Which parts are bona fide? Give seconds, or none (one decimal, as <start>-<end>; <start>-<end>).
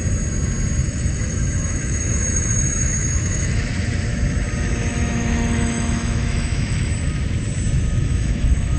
0.0-0.8; 3.6-4.9; 6.9-8.0